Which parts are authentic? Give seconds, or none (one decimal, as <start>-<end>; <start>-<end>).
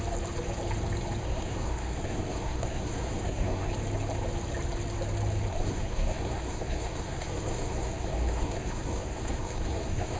0.0-1.2; 3.7-5.5